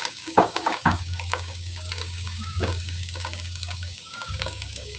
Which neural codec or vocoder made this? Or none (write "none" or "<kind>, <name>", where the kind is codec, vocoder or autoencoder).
codec, DAC